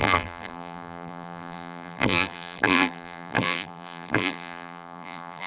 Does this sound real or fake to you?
fake